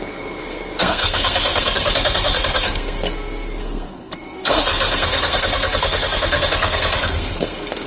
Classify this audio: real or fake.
fake